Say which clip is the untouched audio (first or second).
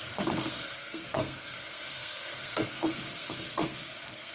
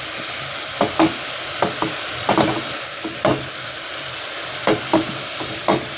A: second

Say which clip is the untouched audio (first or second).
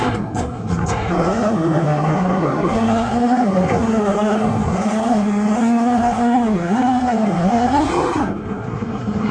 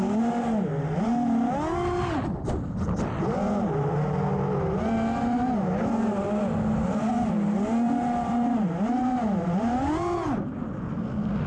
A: second